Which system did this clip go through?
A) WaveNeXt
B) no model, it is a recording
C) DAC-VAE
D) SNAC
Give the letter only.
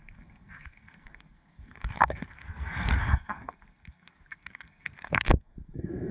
D